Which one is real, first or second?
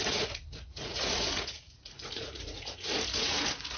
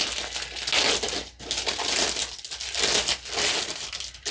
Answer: second